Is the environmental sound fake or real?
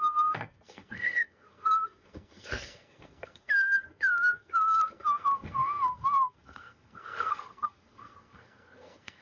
fake